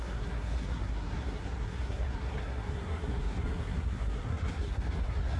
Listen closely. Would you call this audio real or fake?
fake